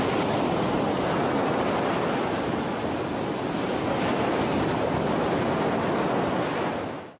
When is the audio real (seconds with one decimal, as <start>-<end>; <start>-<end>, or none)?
0.0-7.2